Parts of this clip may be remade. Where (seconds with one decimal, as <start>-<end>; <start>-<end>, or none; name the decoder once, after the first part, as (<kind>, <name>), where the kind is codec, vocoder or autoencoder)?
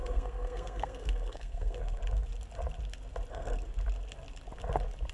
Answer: 0.0-2.0 (codec, SNAC); 3.3-3.7